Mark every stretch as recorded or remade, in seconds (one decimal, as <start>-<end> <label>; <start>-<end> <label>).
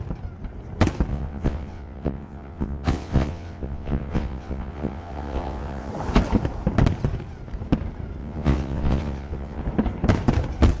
0.0-1.1 recorded; 1.1-5.9 remade; 5.9-8.2 recorded; 8.2-9.6 remade; 9.6-10.8 recorded